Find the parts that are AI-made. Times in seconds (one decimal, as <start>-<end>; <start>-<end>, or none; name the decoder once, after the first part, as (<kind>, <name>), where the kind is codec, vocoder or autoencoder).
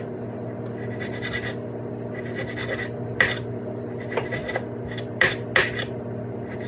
none